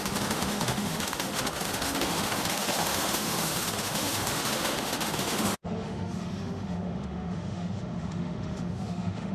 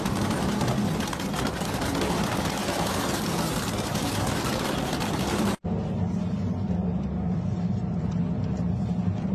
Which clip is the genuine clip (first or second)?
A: second